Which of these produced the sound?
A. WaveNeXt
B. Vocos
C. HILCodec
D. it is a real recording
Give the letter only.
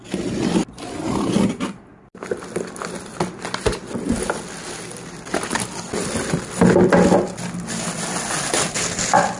D